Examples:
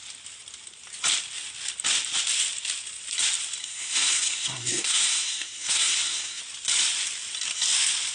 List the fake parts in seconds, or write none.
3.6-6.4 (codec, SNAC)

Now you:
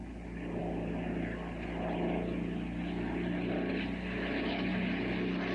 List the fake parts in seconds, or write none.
none

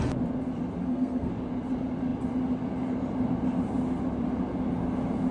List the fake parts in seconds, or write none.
0.8-1.3 (codec, SNAC)

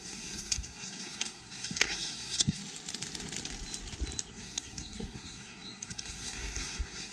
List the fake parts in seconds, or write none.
0.0-2.6 (codec, SNAC); 4.3-7.1

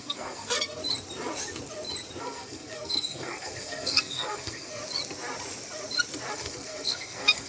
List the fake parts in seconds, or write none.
0.0-0.8 (codec, SNAC); 2.2-4.8; 6.3-7.5

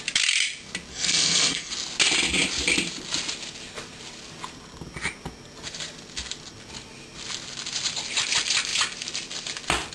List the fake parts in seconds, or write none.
0.9-1.7 (codec, SNAC)

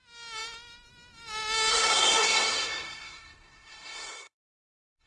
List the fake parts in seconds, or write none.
1.7-5.1 (codec, SNAC)